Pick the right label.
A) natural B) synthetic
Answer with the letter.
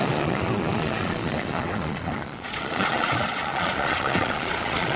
B